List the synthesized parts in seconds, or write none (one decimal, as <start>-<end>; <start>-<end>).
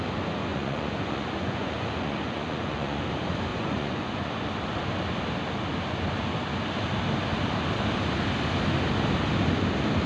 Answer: 0.5-3.0; 3.5-4.3